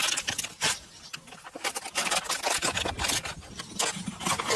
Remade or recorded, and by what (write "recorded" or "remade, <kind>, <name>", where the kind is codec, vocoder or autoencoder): recorded